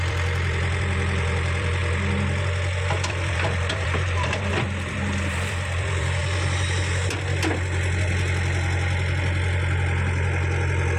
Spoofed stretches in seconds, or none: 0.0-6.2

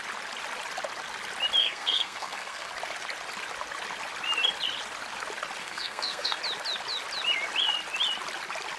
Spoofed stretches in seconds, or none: 1.6-2.7; 5.6-6.4